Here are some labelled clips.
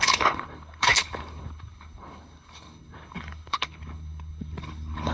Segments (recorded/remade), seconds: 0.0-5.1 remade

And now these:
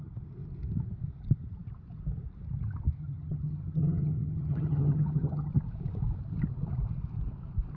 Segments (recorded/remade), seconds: 0.0-3.0 recorded; 3.0-5.5 remade; 5.5-7.8 recorded

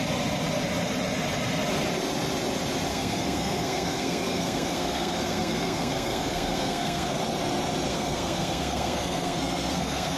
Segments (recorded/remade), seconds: 0.0-2.9 recorded; 2.9-7.2 remade; 7.2-7.9 recorded; 7.9-10.2 remade

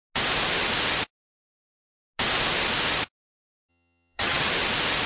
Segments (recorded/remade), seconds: 0.0-3.7 recorded; 3.7-4.5 remade; 4.5-5.1 recorded

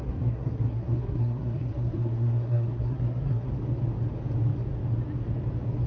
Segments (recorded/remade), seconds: 0.0-3.5 remade; 3.5-5.9 recorded

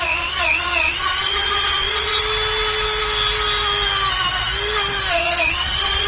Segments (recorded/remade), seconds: 0.0-2.2 remade; 2.2-5.1 recorded; 5.1-6.1 remade